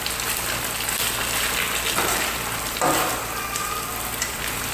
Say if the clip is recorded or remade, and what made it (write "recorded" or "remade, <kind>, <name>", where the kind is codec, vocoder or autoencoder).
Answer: recorded